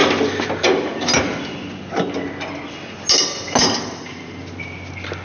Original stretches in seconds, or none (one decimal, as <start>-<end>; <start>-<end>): 0.0-5.2